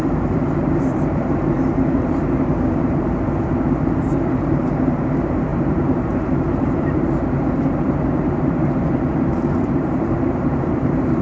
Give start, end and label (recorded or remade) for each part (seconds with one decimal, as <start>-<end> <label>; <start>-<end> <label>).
0.0-11.2 remade